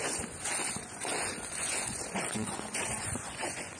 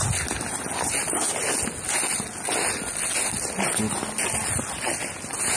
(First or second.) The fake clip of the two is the first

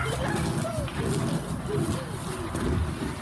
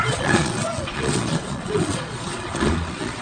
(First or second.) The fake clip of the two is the second